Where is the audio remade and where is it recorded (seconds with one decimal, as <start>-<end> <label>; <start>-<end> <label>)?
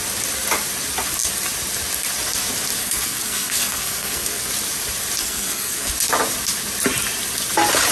0.0-2.8 recorded; 2.8-4.5 remade; 4.5-5.2 recorded; 5.2-5.9 remade; 5.9-7.9 recorded